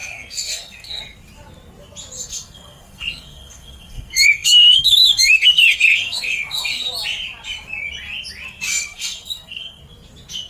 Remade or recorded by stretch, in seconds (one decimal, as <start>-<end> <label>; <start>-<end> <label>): 0.0-1.0 remade; 1.0-2.2 recorded; 2.2-6.9 remade; 6.9-8.7 recorded; 8.7-9.8 remade; 9.8-10.5 recorded